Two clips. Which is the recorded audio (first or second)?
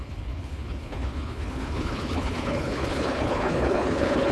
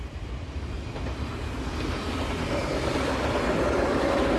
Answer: second